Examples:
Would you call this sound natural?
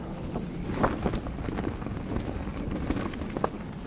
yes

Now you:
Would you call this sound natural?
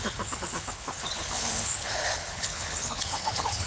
no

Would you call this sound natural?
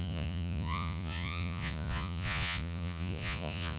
no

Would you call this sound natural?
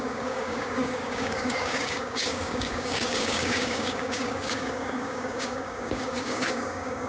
no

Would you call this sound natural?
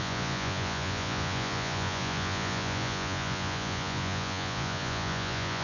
no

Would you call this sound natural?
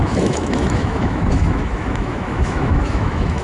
no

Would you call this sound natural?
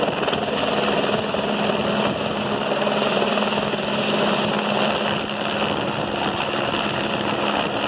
yes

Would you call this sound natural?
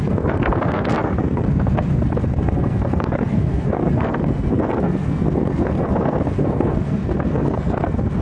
no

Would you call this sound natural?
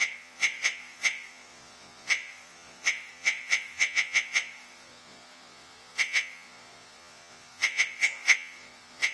no